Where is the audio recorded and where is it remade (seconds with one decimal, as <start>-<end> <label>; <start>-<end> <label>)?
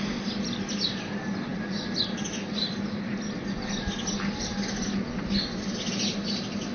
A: 0.0-6.7 recorded